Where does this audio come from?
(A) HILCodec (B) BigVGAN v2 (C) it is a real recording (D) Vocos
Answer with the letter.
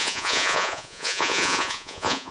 D